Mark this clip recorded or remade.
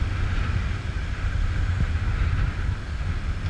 recorded